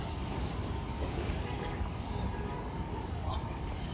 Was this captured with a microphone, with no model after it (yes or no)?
no